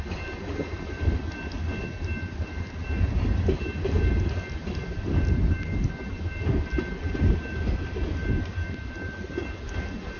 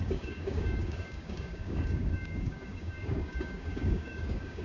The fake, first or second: second